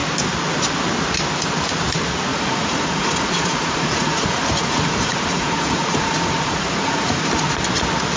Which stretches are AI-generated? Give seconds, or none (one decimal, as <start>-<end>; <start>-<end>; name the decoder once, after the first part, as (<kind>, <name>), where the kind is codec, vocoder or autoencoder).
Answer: 2.3-7.2 (vocoder, Vocos)